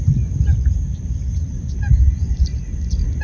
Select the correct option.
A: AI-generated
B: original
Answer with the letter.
B